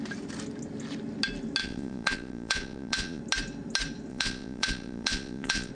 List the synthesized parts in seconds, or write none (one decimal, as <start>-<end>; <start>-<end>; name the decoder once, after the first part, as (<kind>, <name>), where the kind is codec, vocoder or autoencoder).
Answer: 1.6-3.2 (vocoder, Vocos); 4.1-5.7